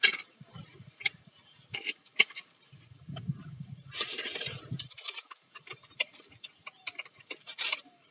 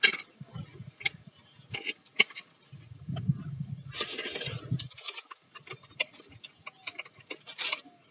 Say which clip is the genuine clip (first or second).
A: second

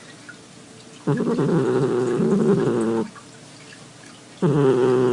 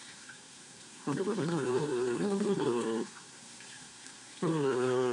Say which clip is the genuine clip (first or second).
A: first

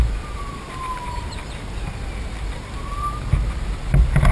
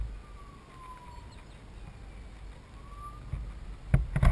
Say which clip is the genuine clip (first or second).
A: second